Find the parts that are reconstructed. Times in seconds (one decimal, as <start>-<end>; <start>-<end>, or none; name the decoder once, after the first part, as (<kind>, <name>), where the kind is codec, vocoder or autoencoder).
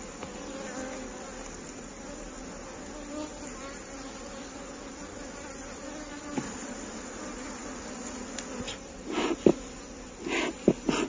none